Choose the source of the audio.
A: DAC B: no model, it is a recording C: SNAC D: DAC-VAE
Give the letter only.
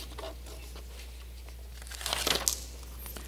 B